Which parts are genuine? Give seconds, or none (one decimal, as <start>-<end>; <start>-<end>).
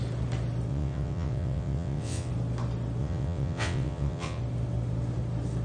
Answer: 0.0-0.7; 2.3-3.0; 4.4-5.6